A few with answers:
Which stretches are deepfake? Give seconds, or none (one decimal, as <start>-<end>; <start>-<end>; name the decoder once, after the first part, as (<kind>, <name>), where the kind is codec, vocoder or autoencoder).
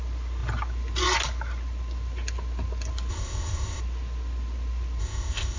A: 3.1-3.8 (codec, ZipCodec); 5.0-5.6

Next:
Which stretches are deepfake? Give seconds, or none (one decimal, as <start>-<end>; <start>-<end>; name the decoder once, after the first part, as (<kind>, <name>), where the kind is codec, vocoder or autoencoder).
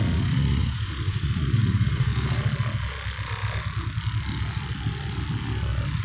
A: 0.0-2.1 (vocoder, Vocos)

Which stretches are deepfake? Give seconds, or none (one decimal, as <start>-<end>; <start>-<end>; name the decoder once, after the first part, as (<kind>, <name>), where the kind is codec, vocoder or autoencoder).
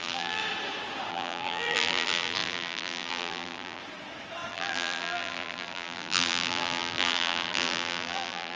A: 0.0-0.4 (vocoder, BigVGAN v2); 1.1-3.8; 4.5-8.6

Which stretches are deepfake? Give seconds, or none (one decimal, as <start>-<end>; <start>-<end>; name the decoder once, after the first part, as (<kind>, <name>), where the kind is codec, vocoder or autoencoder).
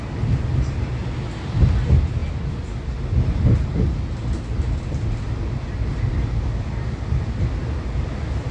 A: none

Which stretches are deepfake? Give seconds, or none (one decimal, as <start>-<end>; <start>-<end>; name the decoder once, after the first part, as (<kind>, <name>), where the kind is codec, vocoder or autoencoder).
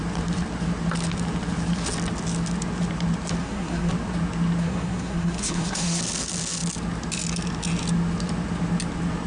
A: 3.4-3.9 (codec, SNAC); 4.6-6.0